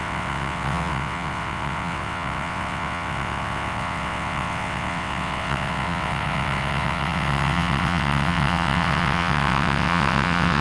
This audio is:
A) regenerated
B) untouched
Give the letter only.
A